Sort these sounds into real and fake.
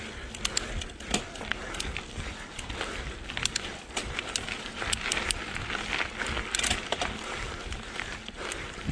real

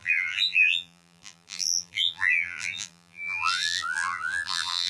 fake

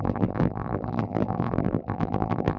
fake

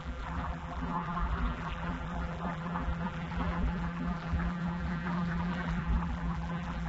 fake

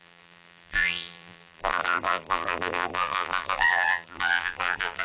fake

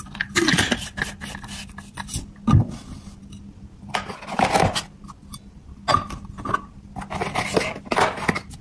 real